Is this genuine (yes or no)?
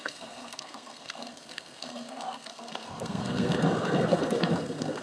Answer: no